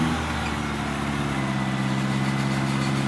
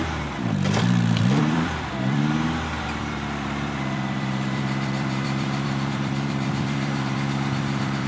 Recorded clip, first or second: first